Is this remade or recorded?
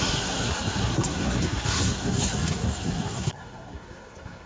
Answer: remade